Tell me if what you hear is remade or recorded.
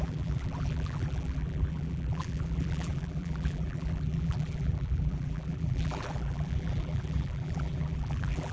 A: remade